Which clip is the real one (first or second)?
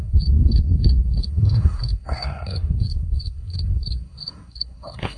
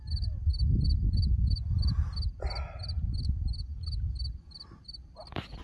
second